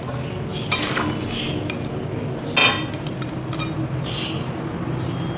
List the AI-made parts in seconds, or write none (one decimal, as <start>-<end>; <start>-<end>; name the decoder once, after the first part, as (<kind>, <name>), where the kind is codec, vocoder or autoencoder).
none

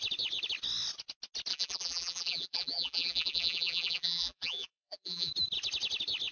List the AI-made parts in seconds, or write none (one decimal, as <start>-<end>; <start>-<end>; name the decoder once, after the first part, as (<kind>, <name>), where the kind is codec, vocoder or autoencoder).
1.5-5.3 (vocoder, BigVGAN v2)

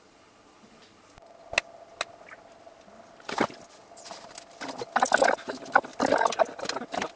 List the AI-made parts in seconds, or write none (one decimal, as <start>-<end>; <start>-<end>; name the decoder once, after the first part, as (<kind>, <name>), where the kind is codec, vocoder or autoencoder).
3.8-4.8 (vocoder, BigVGAN v2)

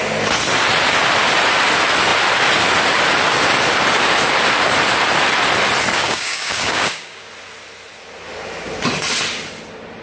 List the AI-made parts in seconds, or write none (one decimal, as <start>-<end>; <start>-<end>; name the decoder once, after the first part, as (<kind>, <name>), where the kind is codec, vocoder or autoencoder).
5.9-7.3 (codec, DAC)

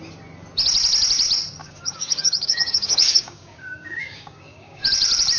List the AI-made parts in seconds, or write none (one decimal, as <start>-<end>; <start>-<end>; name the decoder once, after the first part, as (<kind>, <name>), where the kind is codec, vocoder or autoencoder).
1.6-4.8 (codec, DAC)

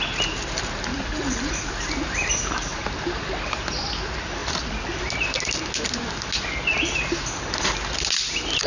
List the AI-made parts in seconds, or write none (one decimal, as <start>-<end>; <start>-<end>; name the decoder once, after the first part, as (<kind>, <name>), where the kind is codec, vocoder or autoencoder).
0.9-1.7 (vocoder, BigVGAN v2); 4.4-5.0

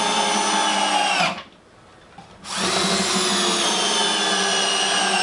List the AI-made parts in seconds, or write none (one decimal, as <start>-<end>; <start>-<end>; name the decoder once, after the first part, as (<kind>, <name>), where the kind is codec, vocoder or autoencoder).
none

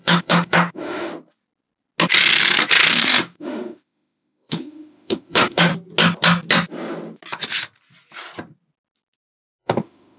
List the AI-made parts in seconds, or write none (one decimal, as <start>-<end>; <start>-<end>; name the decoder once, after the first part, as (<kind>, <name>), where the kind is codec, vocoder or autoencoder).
0.0-1.1 (autoencoder, DAC-VAE); 2.9-5.7; 9.6-10.2